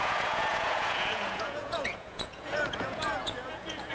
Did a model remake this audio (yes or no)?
yes